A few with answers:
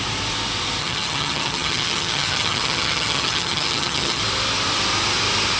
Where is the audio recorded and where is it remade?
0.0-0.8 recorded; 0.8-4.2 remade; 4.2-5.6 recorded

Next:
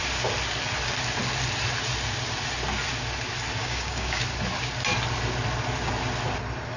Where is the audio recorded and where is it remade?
0.0-3.6 recorded; 3.6-4.2 remade; 4.2-6.8 recorded

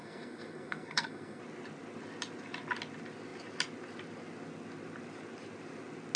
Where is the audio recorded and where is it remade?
0.0-1.4 remade; 1.4-6.2 recorded

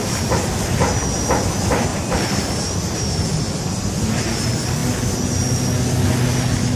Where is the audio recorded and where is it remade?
0.0-1.9 recorded; 1.9-2.7 remade; 2.7-6.8 recorded

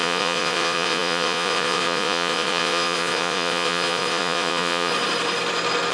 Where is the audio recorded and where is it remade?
0.0-4.9 remade; 4.9-5.9 recorded

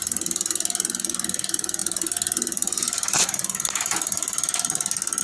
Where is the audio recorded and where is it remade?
0.0-5.2 recorded

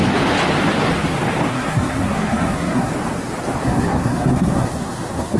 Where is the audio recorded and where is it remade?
0.0-1.5 recorded; 1.5-2.9 remade; 2.9-3.6 recorded; 3.6-5.4 remade

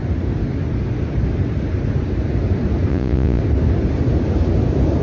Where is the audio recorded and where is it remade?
0.0-2.9 recorded; 2.9-3.4 remade; 3.4-5.0 recorded